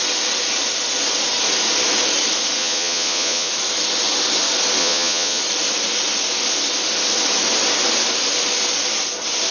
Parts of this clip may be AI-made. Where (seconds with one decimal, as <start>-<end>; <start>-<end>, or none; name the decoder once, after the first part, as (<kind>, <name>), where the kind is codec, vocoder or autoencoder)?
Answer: 2.6-3.5 (vocoder, Vocos); 4.8-5.4